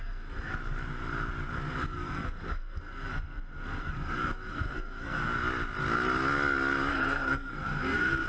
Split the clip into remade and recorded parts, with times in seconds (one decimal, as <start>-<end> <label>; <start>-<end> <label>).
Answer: 0.0-0.5 remade; 0.5-1.8 recorded; 1.8-5.2 remade; 5.2-6.9 recorded; 6.9-8.3 remade